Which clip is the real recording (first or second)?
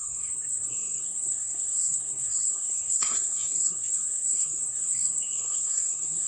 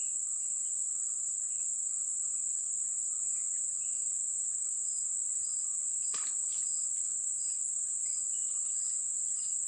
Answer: second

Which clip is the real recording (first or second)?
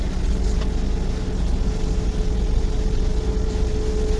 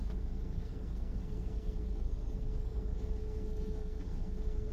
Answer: first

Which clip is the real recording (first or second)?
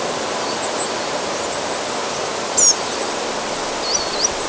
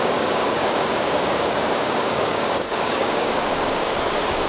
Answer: first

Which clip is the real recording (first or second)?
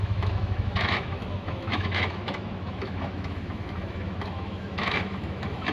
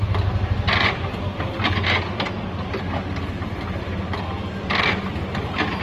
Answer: second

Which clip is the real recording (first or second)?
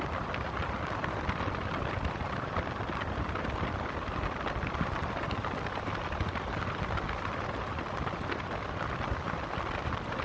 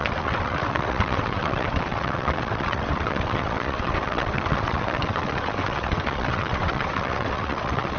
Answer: first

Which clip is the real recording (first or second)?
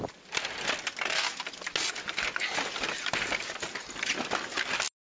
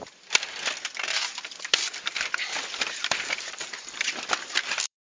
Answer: first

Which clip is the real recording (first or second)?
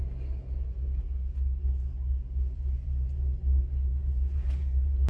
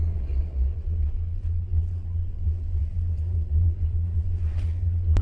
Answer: first